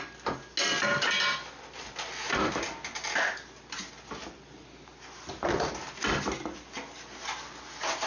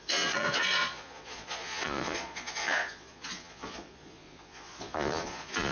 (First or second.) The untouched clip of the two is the first